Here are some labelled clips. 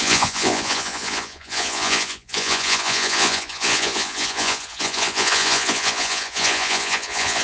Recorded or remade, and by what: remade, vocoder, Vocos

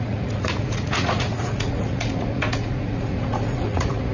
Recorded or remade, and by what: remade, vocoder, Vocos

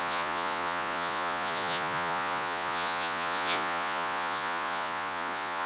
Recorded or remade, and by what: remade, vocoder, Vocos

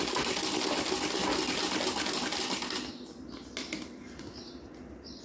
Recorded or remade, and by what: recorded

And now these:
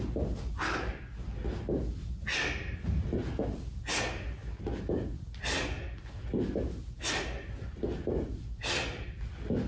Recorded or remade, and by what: recorded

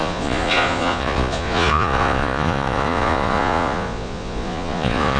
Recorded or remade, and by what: remade, vocoder, Vocos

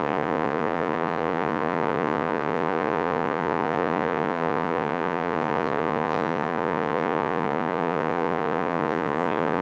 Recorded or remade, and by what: remade, vocoder, Vocos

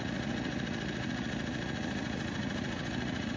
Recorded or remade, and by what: remade, vocoder, Vocos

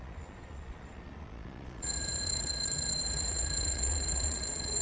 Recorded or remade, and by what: remade, vocoder, Vocos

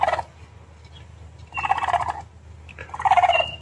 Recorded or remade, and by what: recorded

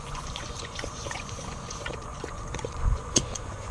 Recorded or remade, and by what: remade, vocoder, Vocos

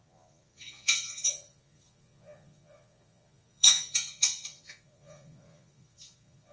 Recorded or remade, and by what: remade, vocoder, Vocos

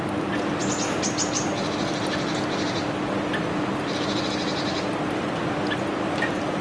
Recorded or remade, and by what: recorded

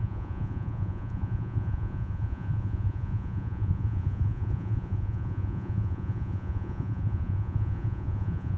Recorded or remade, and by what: remade, vocoder, Vocos